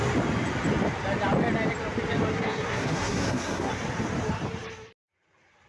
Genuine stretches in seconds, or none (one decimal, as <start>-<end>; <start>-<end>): 0.0-2.3; 3.7-5.7